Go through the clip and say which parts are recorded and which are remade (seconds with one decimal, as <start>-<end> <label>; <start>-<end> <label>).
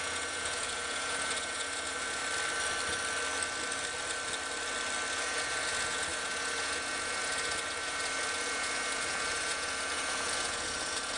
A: 0.0-2.2 remade; 2.2-5.1 recorded; 5.1-11.2 remade